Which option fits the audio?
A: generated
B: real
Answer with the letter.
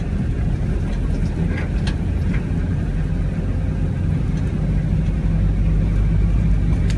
B